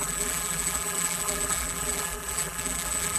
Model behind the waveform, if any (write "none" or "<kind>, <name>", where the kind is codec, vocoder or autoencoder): vocoder, BigVGAN v2